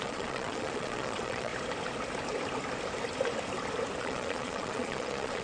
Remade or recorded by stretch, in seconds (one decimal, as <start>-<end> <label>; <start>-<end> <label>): 0.0-1.5 remade; 1.5-4.0 recorded; 4.0-5.4 remade